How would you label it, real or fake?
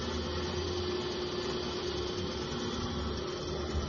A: real